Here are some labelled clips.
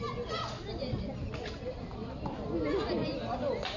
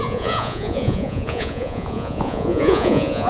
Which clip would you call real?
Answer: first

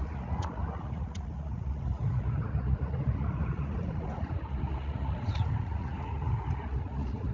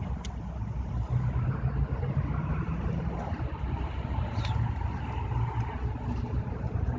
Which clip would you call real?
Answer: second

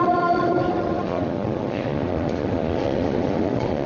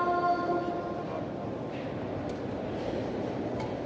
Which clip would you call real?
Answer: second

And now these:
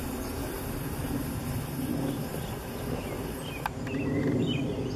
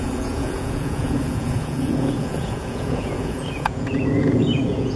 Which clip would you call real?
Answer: first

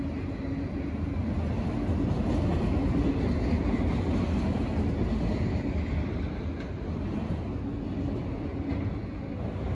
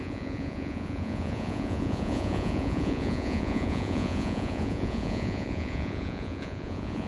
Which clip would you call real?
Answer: first